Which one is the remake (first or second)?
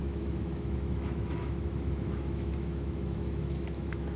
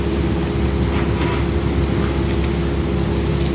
first